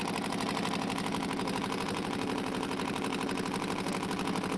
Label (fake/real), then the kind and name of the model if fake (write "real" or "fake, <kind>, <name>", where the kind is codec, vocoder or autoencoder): real